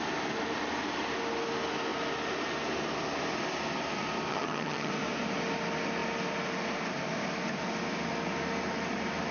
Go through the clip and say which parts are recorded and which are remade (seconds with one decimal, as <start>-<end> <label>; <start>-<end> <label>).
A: 0.0-4.3 recorded; 4.3-4.9 remade; 4.9-9.3 recorded